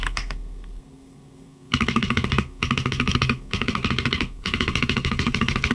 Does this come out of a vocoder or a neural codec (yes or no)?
yes